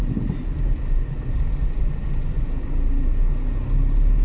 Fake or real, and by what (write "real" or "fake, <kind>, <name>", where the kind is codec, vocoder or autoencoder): real